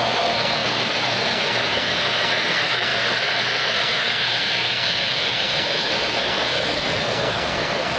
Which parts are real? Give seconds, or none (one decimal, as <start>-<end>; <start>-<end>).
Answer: none